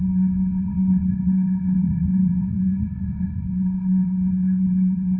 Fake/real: fake